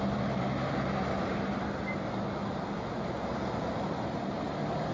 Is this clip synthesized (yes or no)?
no